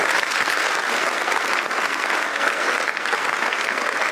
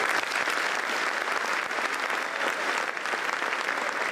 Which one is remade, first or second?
first